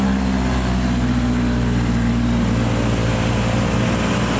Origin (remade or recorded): recorded